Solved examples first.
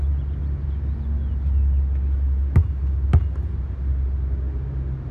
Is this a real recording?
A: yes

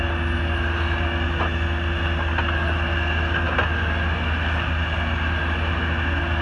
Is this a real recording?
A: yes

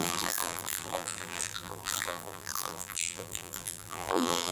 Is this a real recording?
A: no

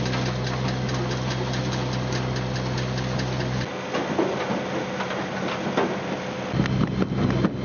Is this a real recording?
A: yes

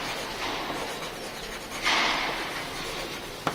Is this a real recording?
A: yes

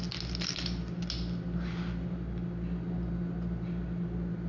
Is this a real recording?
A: yes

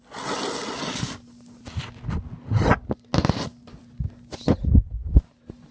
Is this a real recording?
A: yes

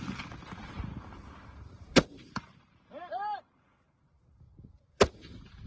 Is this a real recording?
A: no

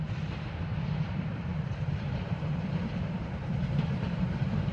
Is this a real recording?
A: no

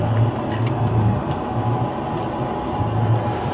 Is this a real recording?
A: yes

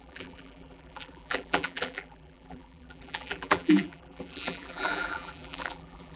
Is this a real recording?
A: no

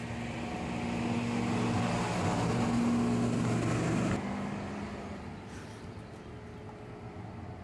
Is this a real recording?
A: yes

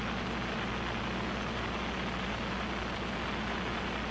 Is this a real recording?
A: yes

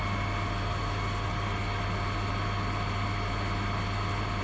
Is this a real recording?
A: yes